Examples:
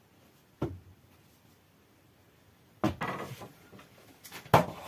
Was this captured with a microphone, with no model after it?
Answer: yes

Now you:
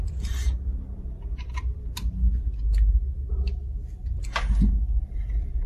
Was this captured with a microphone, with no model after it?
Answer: yes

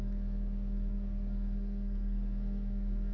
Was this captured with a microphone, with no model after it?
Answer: no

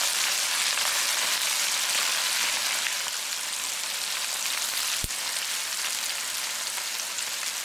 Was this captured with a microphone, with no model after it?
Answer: yes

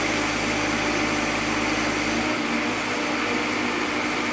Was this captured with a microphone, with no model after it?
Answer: yes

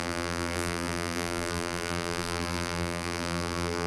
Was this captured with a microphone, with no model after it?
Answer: no